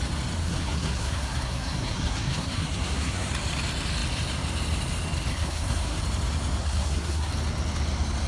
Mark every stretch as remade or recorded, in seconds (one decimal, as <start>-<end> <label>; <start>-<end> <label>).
0.0-0.4 recorded; 0.4-3.3 remade; 3.3-5.3 recorded; 5.3-6.0 remade; 6.0-6.6 recorded; 6.6-7.3 remade; 7.3-8.3 recorded